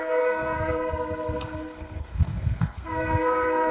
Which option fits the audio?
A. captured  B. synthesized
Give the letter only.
B